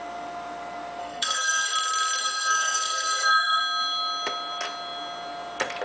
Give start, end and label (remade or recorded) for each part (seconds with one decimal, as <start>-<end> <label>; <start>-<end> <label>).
0.0-1.0 recorded; 1.0-1.7 remade; 1.7-2.2 recorded; 2.2-3.6 remade; 3.6-5.8 recorded